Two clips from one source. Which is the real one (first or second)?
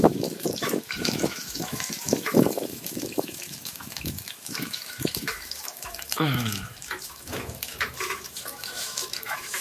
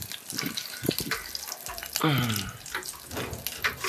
second